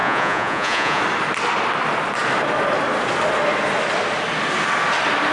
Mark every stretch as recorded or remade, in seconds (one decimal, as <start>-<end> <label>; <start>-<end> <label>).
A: 0.0-1.0 remade; 1.0-5.3 recorded